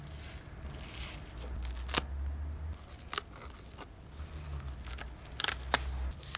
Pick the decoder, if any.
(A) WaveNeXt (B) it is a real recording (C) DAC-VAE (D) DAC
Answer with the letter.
B